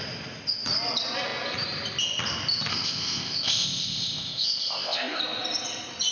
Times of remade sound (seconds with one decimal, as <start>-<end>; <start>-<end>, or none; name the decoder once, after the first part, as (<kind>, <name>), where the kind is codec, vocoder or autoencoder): 2.7-5.2 (codec, ZipCodec)